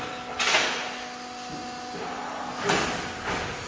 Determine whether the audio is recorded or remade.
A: recorded